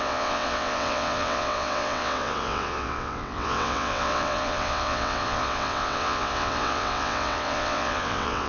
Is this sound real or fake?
fake